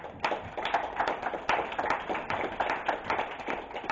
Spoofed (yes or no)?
yes